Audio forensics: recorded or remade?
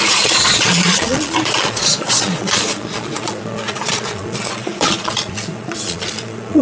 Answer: remade